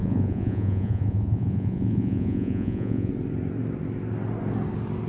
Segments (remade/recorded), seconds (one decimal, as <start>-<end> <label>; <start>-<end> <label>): 0.0-3.1 remade; 3.1-5.1 recorded